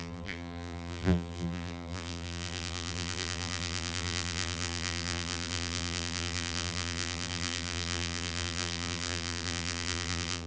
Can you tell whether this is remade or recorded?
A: remade